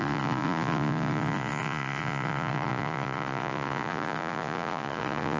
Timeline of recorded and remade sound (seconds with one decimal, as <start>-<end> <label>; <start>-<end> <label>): 0.0-5.4 remade